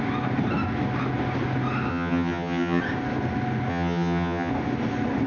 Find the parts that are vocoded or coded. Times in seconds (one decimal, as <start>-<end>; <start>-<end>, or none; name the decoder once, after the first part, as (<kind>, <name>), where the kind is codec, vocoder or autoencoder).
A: 1.9-2.8 (vocoder, HiFi-GAN); 3.7-4.5